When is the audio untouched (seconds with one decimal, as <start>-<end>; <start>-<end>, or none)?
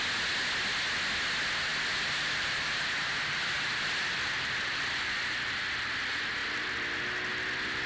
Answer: 0.0-1.7; 5.6-7.9